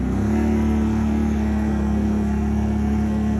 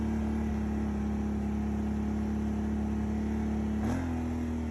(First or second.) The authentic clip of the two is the second